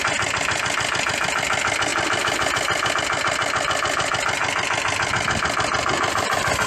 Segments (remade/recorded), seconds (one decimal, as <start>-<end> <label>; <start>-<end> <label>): 0.0-4.4 remade; 4.4-5.1 recorded; 5.1-6.7 remade